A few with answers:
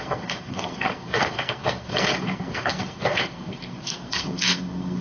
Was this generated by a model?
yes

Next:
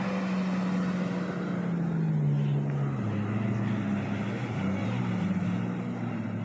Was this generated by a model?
no